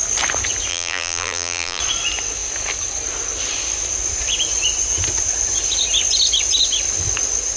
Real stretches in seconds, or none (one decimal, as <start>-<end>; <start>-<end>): 0.0-0.7; 1.8-7.6